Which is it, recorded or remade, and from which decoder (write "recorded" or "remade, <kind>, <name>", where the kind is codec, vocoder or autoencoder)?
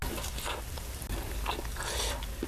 recorded